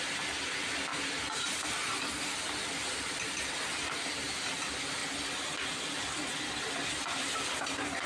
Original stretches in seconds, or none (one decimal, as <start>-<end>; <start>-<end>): 0.9-3.5; 5.0-7.6